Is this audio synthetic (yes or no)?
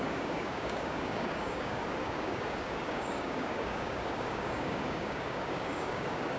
yes